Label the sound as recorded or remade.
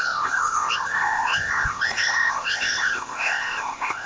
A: remade